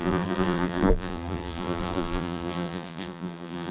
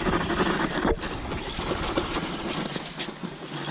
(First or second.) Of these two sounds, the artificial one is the first